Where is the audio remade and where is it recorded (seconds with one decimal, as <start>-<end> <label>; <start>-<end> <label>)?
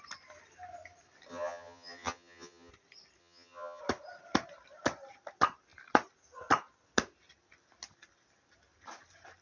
0.0-1.3 recorded; 1.3-2.7 remade; 2.7-3.2 recorded; 3.2-3.8 remade; 3.8-9.4 recorded